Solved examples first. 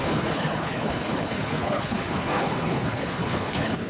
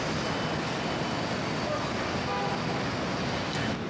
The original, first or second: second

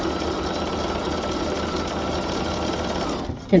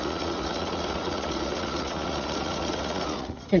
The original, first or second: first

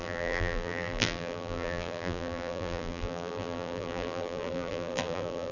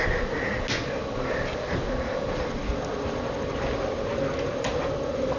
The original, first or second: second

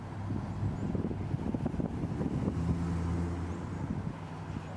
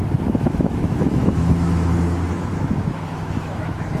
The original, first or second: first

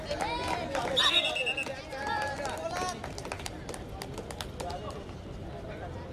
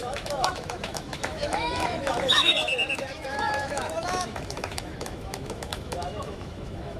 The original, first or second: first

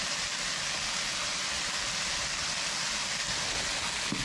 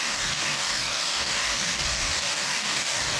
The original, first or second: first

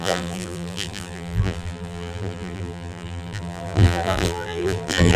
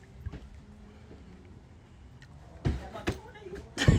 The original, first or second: second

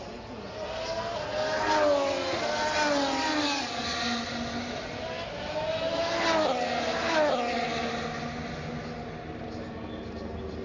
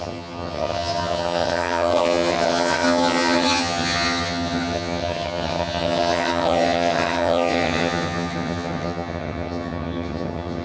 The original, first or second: first